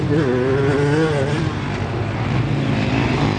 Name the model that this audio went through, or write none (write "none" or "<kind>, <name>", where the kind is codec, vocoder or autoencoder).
none